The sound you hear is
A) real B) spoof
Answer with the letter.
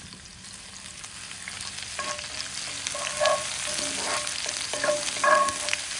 A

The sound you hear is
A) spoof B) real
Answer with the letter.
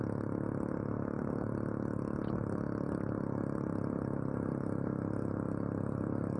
B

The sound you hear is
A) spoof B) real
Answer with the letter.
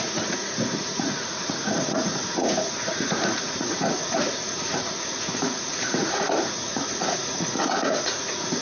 A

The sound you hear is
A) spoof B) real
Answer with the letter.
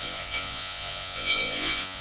A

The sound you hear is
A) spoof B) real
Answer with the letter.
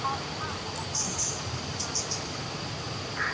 B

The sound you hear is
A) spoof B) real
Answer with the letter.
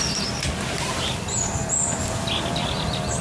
B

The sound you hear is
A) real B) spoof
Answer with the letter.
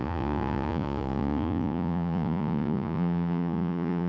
B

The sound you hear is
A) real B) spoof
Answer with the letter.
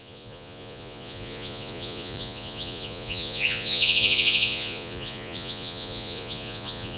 B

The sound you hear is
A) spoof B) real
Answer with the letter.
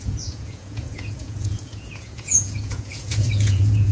A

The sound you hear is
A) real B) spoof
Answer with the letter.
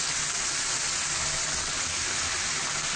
A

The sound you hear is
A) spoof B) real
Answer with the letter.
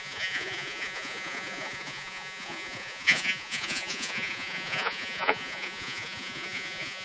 A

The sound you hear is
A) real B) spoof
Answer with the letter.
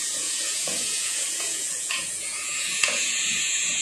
B